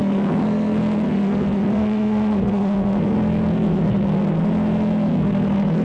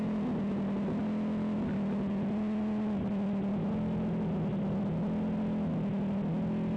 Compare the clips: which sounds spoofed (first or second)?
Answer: first